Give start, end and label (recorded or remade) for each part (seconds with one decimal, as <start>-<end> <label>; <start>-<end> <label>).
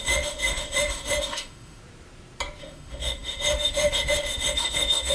0.0-1.8 remade; 1.8-2.6 recorded; 2.6-5.1 remade